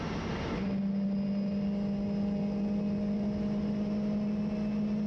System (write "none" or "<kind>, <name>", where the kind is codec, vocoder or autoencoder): none